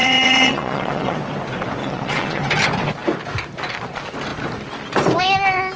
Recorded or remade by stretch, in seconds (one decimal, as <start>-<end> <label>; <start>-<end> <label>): 0.0-1.2 remade; 1.2-1.8 recorded; 1.8-2.5 remade; 2.5-5.8 recorded